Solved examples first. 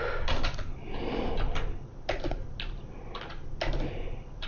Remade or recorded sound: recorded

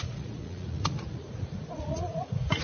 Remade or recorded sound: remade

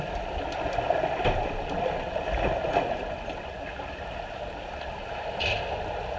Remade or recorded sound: recorded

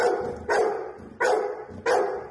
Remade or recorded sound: recorded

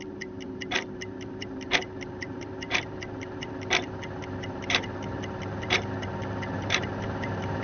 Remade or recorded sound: remade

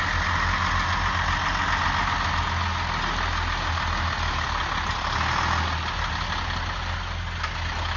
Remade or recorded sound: recorded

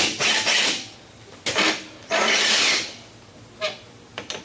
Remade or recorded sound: recorded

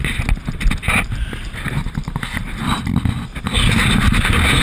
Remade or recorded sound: recorded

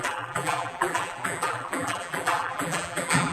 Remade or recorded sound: remade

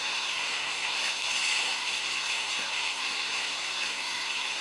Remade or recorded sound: remade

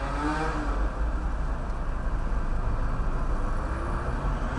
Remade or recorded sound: recorded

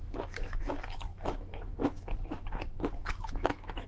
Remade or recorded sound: remade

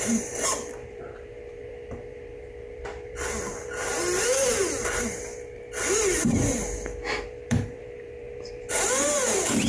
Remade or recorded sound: remade